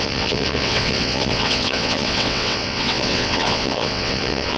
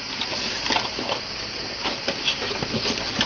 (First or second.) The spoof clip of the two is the first